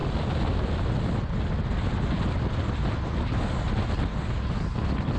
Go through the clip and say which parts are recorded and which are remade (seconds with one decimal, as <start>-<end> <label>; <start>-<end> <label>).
0.0-5.2 recorded